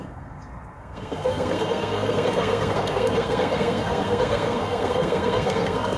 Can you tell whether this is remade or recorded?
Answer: remade